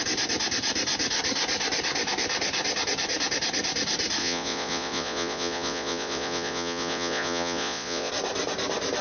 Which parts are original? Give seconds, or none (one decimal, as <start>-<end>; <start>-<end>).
0.0-4.2; 8.1-9.0